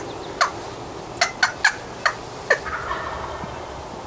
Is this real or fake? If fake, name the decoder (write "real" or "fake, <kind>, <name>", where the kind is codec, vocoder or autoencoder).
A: real